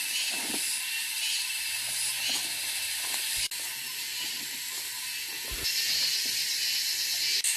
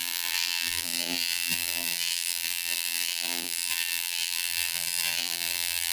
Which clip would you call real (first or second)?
first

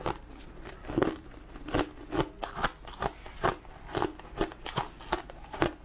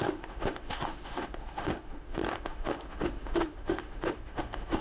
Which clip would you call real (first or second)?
first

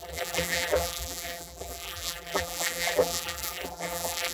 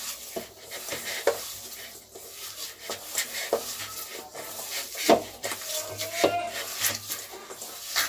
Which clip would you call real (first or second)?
second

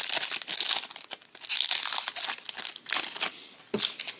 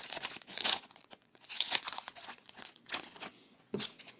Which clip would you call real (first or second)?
first